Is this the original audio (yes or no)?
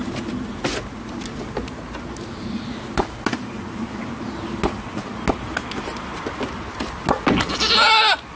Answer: yes